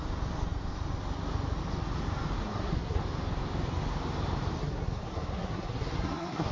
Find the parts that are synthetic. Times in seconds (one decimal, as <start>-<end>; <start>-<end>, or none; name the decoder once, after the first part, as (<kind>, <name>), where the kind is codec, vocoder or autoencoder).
2.4-3.0 (codec, SNAC); 4.6-6.5